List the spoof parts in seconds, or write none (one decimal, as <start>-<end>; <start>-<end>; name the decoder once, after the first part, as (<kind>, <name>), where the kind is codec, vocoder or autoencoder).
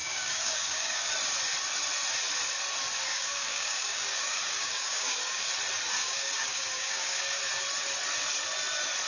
0.0-1.1 (codec, DAC); 3.1-5.5; 6.0-7.4